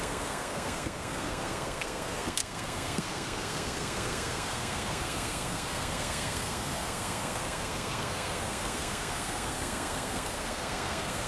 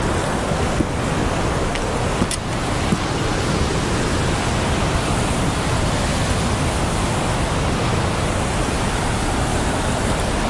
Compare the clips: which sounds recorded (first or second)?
second